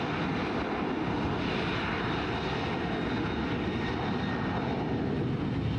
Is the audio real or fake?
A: real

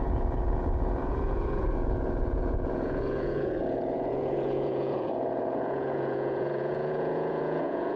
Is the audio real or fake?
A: fake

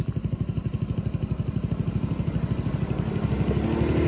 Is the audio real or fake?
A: real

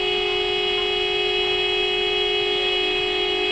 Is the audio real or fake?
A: real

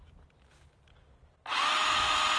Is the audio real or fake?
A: real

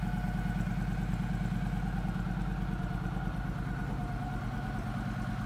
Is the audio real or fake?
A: real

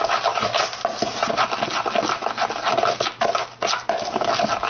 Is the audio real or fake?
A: real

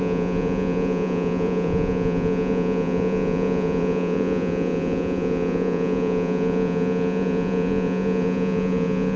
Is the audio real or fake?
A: fake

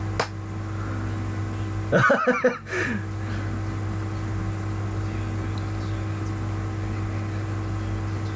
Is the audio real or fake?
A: real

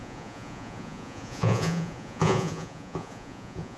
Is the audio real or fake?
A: fake